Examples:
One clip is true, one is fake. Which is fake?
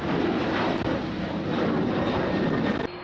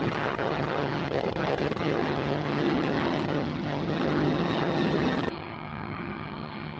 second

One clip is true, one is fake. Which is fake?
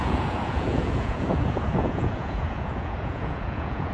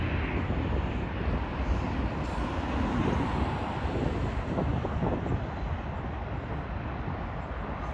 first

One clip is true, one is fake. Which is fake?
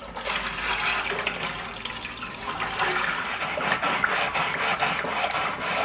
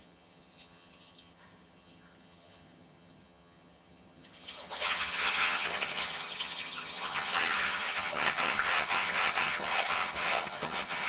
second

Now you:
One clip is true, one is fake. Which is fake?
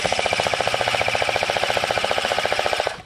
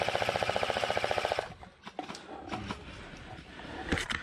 first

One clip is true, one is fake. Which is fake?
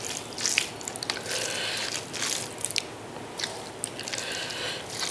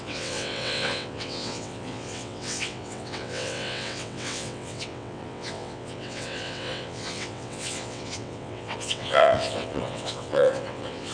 second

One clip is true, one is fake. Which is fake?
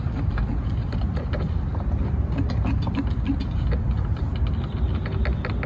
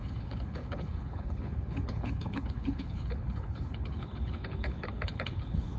second